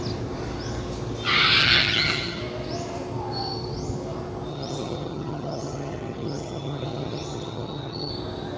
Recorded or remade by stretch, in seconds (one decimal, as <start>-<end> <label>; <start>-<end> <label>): 0.0-1.6 recorded; 1.6-2.4 remade; 2.4-4.5 recorded; 4.5-8.1 remade; 8.1-8.6 recorded